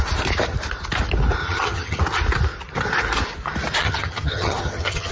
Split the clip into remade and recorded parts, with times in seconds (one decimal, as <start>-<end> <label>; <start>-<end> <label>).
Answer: 0.0-1.4 recorded; 1.4-2.0 remade; 2.0-3.8 recorded; 3.8-5.1 remade